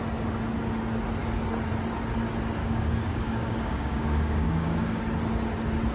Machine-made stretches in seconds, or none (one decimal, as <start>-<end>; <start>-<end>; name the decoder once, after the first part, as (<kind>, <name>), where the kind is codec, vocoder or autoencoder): 2.6-5.0 (codec, DAC)